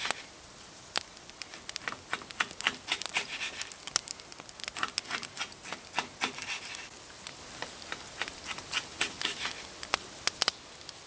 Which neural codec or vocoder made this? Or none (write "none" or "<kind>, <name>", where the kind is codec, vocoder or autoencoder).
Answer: none